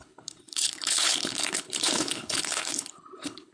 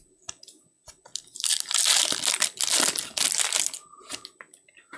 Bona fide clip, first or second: second